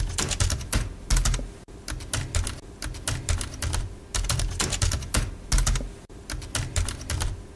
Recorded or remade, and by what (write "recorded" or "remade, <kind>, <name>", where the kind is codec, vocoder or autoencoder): recorded